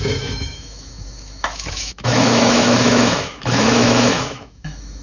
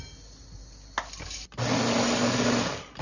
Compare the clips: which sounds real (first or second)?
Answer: second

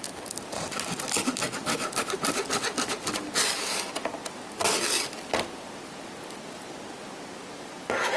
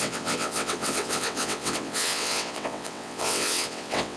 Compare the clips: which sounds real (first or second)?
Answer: first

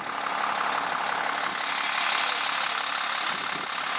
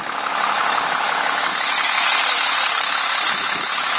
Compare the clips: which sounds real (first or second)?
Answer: first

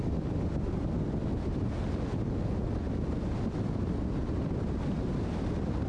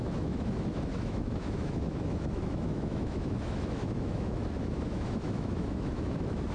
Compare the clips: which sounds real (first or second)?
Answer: first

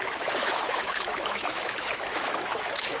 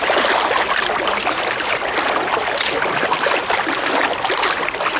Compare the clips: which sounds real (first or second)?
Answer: second